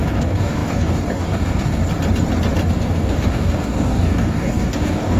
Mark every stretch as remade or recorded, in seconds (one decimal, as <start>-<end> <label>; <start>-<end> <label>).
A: 0.0-1.8 remade; 1.8-2.7 recorded; 2.7-5.2 remade